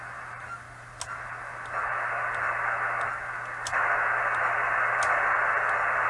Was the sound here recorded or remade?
recorded